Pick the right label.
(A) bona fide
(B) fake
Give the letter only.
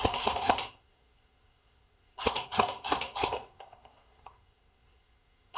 B